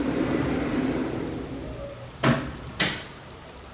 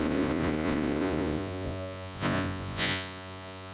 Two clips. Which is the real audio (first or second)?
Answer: first